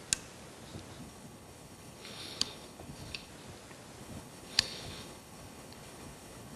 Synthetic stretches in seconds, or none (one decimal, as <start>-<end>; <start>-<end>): 1.0-3.3; 4.0-6.6